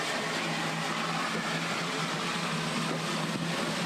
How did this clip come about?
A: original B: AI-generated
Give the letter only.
A